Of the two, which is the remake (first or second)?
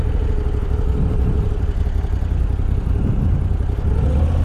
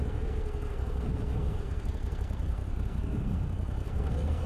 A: second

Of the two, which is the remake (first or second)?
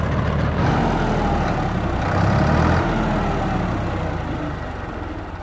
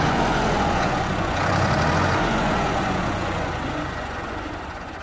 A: second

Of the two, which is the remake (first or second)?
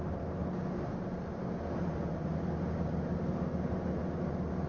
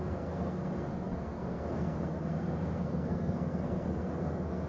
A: second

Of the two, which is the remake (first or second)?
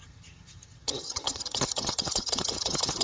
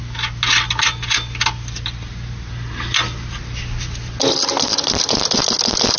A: first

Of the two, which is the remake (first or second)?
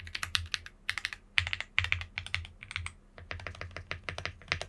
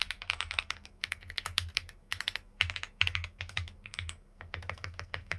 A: second